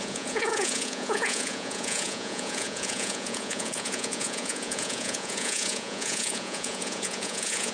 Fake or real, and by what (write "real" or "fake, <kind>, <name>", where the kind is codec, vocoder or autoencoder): fake, vocoder, Vocos